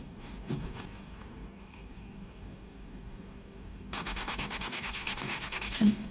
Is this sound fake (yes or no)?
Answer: yes